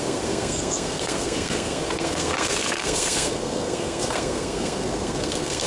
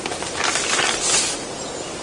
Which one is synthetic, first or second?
first